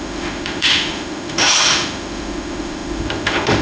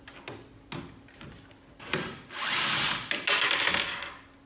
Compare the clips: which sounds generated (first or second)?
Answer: first